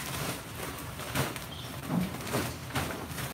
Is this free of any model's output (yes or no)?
no